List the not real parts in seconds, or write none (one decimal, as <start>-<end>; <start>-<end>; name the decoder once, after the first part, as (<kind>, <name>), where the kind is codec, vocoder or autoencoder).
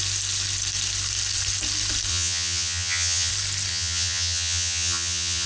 2.1-3.3 (vocoder, HiFi-GAN); 3.7-5.5